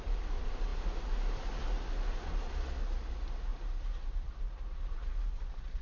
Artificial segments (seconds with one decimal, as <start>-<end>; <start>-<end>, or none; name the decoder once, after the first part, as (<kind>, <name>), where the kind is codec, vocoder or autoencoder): 3.5-4.8 (vocoder, BigVGAN v2)

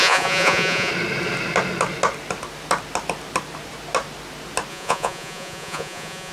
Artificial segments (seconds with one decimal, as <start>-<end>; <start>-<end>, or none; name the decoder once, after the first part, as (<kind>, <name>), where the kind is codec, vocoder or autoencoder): 0.0-0.9 (vocoder, Vocos); 4.7-6.3

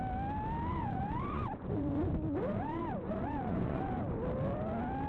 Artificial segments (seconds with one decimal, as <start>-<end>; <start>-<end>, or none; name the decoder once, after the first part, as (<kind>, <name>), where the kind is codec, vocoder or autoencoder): 0.7-2.1 (vocoder, Vocos); 2.5-3.9

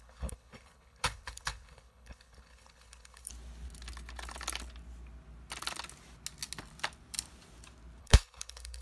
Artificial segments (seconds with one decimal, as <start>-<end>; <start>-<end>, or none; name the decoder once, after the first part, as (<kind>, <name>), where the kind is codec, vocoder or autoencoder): 0.0-3.3 (codec, HILCodec); 8.0-8.8

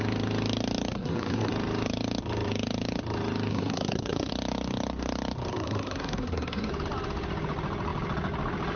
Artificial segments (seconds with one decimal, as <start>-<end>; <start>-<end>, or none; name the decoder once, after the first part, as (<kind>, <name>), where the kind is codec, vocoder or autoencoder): 0.9-1.5 (codec, SNAC); 3.5-4.3; 5.5-6.7

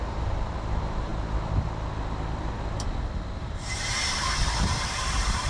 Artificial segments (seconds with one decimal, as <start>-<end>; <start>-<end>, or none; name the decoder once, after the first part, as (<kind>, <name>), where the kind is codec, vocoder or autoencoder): 0.0-1.1 (vocoder, BigVGAN v2); 3.4-5.5

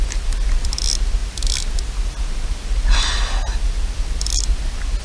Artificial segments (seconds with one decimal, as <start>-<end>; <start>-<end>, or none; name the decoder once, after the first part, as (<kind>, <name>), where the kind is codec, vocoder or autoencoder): none